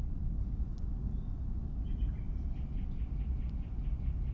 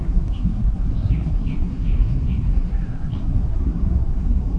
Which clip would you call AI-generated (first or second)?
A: second